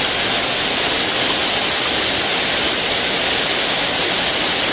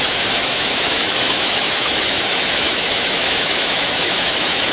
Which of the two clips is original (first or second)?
first